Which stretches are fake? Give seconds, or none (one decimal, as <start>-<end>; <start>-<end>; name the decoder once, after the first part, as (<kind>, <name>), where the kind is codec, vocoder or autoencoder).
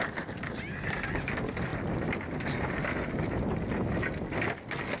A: none